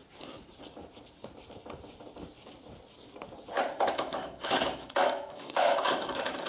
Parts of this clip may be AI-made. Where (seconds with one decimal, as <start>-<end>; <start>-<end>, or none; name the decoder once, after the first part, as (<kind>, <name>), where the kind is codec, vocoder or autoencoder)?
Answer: 3.9-6.5 (autoencoder, DAC-VAE)